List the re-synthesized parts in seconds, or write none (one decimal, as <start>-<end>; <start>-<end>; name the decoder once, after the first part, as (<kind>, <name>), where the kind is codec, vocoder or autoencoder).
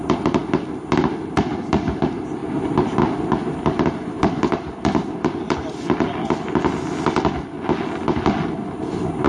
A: none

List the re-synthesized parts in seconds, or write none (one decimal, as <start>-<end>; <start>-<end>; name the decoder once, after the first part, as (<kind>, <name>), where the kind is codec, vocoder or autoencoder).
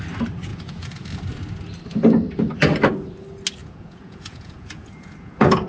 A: 0.5-1.0 (vocoder, Vocos); 3.6-5.7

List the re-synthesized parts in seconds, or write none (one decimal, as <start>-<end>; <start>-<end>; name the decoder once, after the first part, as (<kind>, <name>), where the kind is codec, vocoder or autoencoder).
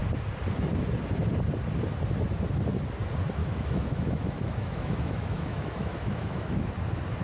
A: 3.4-6.7 (autoencoder, DAC-VAE)